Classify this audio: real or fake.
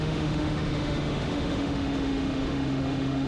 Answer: fake